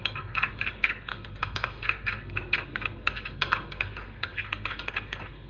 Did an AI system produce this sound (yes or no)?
yes